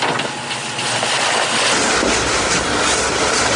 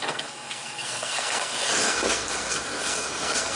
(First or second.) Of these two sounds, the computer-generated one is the second